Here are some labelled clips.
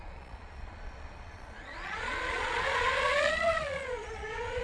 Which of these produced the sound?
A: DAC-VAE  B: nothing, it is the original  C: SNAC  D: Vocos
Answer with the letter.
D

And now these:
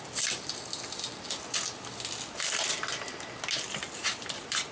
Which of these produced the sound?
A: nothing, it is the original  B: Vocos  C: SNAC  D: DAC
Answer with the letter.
A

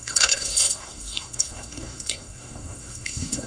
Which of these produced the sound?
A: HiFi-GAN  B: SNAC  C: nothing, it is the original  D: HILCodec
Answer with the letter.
B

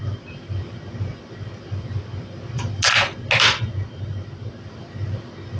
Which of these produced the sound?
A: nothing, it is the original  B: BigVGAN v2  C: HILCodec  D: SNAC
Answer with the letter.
A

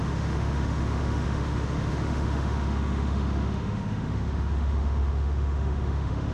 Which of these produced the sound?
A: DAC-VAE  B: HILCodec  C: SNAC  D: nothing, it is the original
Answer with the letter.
A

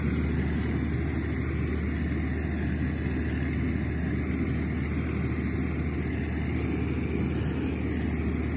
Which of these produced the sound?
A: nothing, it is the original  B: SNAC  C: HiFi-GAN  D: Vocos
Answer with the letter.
A